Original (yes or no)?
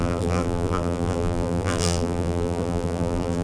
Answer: no